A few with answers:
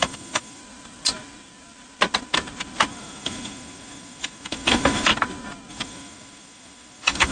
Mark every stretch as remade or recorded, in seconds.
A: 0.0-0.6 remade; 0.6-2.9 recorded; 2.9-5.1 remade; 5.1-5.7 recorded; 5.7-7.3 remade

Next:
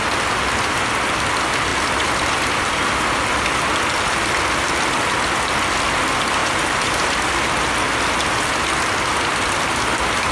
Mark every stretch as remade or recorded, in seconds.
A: 0.0-6.4 recorded; 6.4-7.2 remade; 7.2-10.3 recorded